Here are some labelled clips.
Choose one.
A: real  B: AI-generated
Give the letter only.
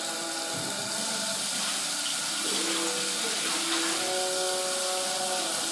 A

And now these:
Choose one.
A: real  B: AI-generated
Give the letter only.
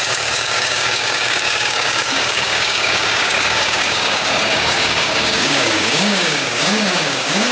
B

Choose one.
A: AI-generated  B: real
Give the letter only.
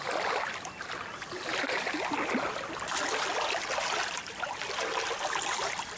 B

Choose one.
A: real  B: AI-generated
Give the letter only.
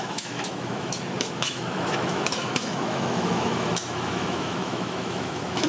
B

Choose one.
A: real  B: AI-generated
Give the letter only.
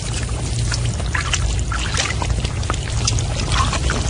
A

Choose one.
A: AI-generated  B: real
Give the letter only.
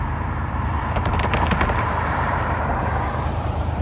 A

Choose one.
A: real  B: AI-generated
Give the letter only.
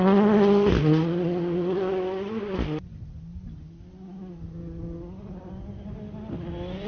A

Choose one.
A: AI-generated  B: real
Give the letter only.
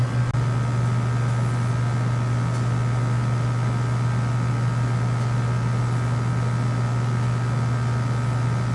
B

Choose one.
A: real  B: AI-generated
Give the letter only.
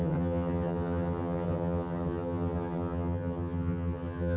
B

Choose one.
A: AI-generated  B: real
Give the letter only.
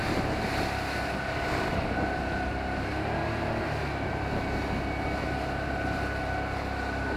B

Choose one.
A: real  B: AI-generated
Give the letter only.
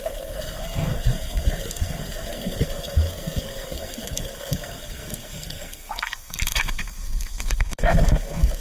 B